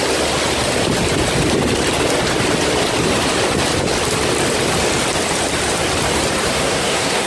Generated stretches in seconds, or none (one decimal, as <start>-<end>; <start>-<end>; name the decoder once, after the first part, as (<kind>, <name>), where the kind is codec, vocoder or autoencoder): 6.5-7.3 (codec, SNAC)